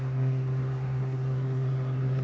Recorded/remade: remade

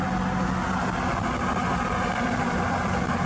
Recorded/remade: recorded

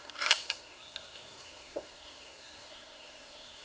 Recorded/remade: remade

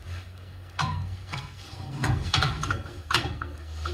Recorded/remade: remade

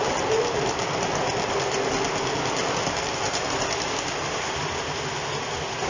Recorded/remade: recorded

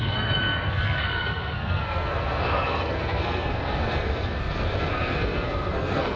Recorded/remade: remade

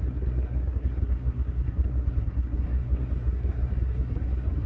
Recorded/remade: remade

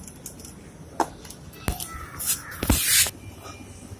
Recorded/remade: recorded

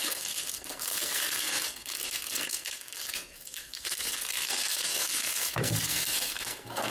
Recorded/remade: remade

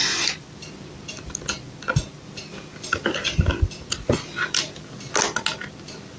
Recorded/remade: recorded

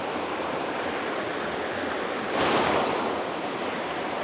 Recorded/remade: recorded